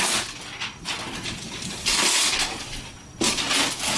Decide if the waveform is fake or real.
real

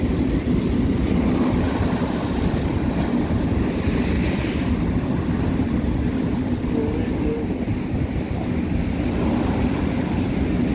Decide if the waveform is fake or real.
real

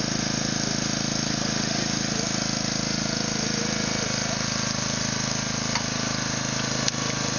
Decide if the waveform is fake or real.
real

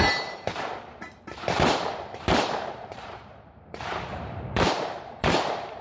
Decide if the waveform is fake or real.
fake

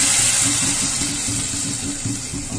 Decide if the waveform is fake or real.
real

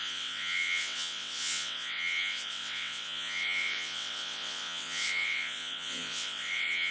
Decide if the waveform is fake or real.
fake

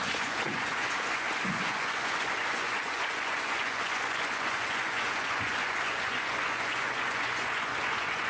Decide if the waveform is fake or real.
fake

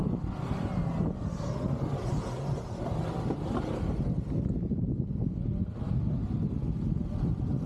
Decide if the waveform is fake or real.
real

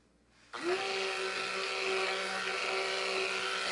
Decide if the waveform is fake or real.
real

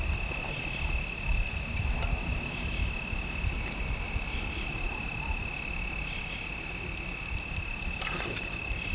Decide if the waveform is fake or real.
real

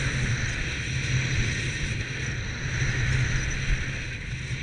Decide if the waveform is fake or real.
real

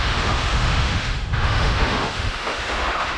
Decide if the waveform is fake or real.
fake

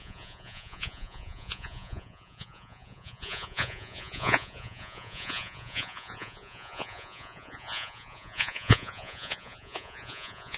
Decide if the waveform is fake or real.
fake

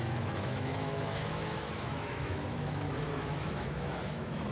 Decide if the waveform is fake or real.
fake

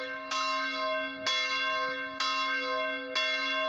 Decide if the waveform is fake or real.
real